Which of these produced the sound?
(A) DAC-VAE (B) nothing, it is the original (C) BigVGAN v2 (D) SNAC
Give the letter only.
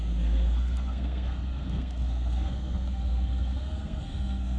D